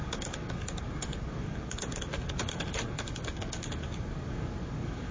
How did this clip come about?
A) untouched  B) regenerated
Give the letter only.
B